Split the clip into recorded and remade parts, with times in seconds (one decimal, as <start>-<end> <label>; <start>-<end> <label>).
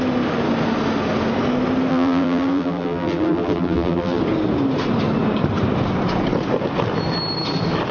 0.0-1.9 recorded; 1.9-4.2 remade; 4.2-7.9 recorded